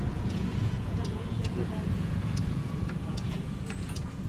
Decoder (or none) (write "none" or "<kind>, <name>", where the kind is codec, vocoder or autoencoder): vocoder, Vocos